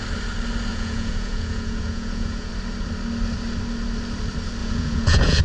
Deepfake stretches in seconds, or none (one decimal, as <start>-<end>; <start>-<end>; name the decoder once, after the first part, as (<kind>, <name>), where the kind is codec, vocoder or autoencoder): 0.7-2.5 (vocoder, Vocos); 4.6-5.4